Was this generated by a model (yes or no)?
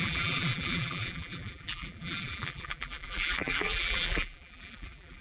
yes